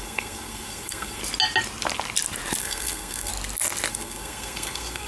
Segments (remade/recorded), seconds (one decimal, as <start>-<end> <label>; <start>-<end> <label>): 0.0-1.2 remade; 1.2-2.6 recorded; 2.6-3.3 remade; 3.3-3.9 recorded; 3.9-5.1 remade